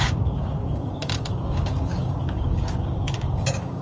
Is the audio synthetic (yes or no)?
yes